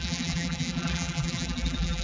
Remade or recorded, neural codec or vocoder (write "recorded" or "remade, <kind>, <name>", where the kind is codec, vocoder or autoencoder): remade, vocoder, BigVGAN v2